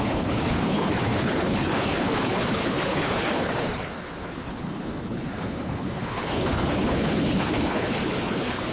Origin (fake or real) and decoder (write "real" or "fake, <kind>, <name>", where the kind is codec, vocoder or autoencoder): fake, codec, HILCodec